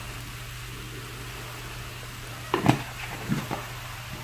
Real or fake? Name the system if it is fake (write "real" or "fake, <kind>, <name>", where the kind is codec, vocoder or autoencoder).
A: real